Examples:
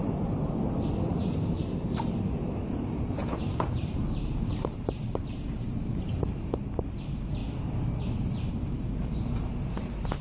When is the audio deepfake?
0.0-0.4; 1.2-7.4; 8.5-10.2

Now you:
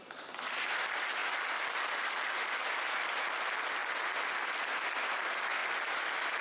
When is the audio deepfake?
none

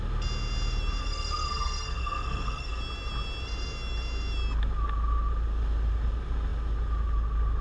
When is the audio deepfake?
1.0-2.8

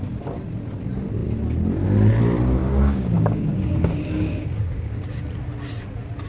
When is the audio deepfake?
2.6-5.2

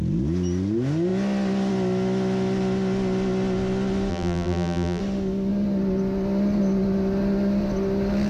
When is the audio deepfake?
4.1-5.0

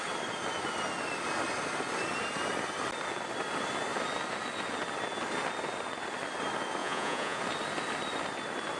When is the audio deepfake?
6.8-7.4

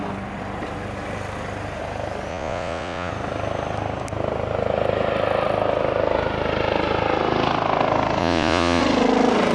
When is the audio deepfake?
2.3-3.1; 8.2-8.8

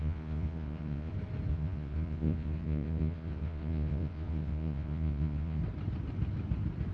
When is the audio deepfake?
0.0-1.1; 1.5-5.6